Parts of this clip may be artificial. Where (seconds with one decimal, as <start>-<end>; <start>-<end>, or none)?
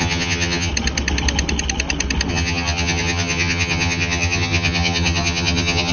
0.0-0.7; 2.3-5.9